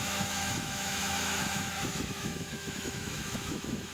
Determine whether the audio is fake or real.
fake